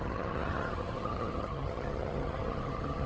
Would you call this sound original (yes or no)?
no